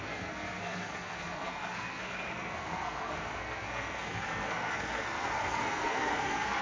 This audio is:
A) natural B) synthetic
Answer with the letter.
B